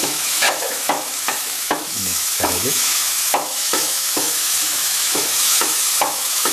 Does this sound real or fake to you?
fake